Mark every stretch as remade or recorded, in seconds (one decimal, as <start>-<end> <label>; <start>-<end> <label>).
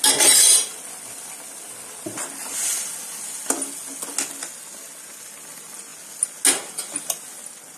0.0-7.8 recorded